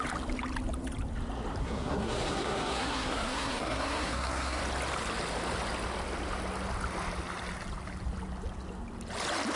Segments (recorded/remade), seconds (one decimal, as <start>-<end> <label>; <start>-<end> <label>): 0.0-1.6 recorded; 1.6-4.6 remade; 4.6-9.6 recorded